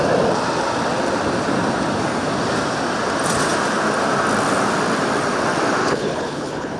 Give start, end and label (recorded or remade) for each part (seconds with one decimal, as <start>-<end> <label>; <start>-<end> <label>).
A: 0.0-5.8 recorded; 5.8-6.8 remade